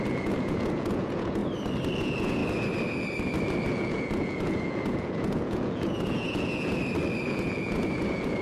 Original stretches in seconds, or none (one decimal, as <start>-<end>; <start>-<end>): 1.4-2.0; 2.4-3.7; 6.8-7.3